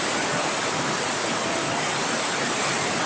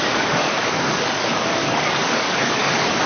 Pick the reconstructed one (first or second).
second